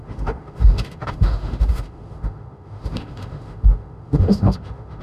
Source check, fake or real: fake